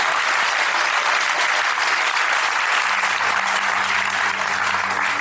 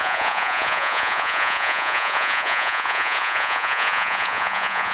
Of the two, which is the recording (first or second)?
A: first